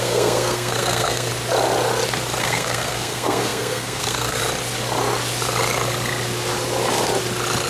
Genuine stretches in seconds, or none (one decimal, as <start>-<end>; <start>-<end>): 1.3-2.4; 4.4-7.7